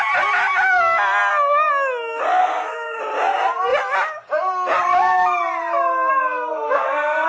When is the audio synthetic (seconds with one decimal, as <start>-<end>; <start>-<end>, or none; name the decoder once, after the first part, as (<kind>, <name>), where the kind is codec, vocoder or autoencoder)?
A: 2.4-3.0 (codec, SNAC); 6.5-7.3

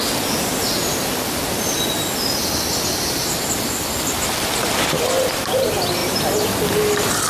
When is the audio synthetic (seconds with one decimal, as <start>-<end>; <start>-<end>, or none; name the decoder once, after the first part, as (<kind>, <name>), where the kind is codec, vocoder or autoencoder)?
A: none

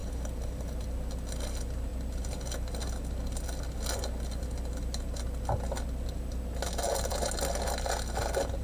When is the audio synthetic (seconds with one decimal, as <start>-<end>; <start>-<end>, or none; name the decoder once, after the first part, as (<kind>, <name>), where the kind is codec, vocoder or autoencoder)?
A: none

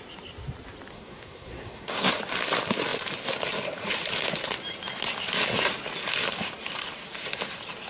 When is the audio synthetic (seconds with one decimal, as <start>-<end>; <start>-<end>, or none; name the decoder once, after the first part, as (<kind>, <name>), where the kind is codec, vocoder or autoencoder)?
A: 0.9-2.1 (codec, SNAC)

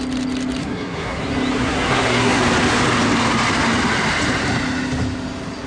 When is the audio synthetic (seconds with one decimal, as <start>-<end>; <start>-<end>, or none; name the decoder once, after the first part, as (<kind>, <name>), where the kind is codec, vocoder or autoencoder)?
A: 0.6-1.2 (codec, SNAC); 1.6-2.4

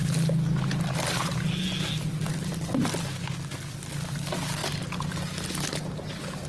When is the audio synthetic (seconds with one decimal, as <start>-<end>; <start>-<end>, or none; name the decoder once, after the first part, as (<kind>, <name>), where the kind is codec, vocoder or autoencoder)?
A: none